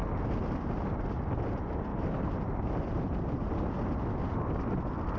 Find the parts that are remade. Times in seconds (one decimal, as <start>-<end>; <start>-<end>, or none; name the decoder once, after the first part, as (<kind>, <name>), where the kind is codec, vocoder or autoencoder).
1.9-3.0 (vocoder, BigVGAN v2)